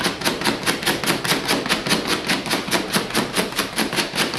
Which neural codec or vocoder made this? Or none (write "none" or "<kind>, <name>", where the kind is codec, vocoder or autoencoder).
none